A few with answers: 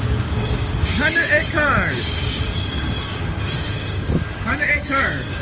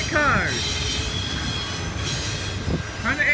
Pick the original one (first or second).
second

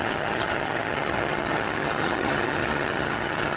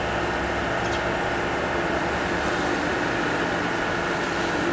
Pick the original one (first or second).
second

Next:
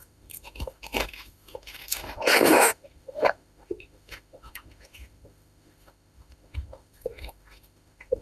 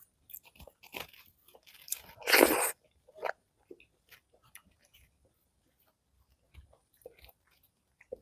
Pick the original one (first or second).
second